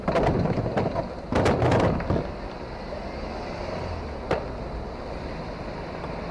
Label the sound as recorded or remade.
recorded